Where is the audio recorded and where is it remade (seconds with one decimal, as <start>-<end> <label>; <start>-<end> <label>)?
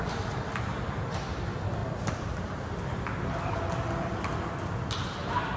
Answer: 0.0-5.6 recorded